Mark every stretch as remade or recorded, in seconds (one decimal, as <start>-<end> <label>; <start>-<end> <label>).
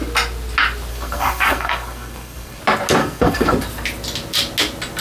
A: 0.0-0.9 recorded; 0.9-2.6 remade; 2.6-3.0 recorded; 3.0-3.5 remade; 3.5-5.0 recorded